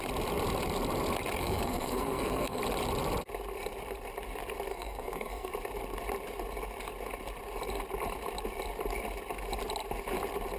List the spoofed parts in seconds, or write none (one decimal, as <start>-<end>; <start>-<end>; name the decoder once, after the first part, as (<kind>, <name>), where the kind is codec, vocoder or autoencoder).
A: 1.4-2.6 (codec, SNAC); 4.7-5.5